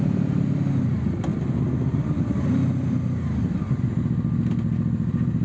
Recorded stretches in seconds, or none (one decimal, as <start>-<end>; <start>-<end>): 0.0-5.4